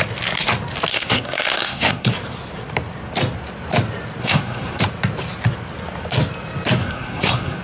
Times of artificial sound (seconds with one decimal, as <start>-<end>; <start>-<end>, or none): 0.9-2.1; 4.2-4.8; 6.8-7.6